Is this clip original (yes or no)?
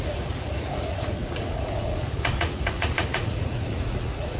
no